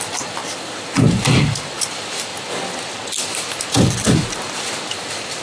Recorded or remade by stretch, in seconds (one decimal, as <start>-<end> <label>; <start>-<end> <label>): 0.0-5.4 recorded